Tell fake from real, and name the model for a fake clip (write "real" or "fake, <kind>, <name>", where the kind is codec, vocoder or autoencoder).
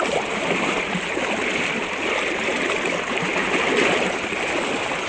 real